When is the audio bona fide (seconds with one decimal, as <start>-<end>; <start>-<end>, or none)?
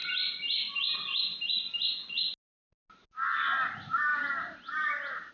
0.0-4.1